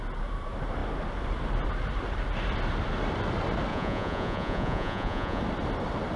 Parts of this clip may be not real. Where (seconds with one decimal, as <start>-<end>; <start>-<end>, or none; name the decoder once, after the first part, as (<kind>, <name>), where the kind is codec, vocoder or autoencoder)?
3.7-5.4 (vocoder, Vocos)